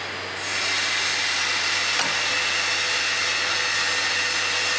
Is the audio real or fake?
real